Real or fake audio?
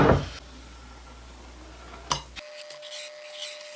real